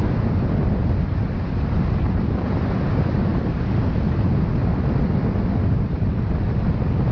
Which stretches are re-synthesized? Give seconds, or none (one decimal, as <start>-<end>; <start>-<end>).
0.0-0.8; 2.0-3.3; 4.1-7.1